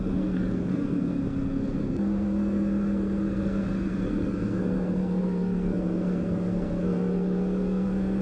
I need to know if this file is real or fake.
fake